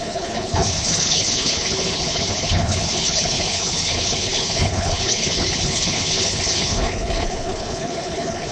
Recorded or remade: remade